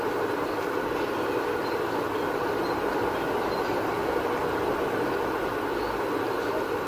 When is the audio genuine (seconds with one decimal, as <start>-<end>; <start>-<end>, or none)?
0.0-6.9